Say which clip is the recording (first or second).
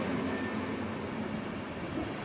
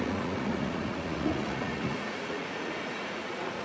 first